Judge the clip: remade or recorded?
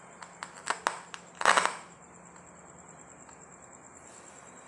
recorded